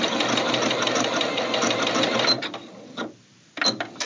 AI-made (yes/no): no